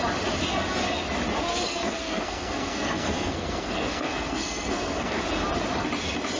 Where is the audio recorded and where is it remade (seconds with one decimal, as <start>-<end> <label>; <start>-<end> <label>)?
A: 0.0-1.5 recorded; 1.5-5.2 remade; 5.2-6.4 recorded